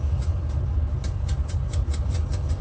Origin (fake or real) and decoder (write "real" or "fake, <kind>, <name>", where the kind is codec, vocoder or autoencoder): real